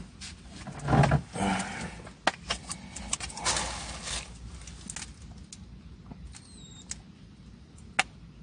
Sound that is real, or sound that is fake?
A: real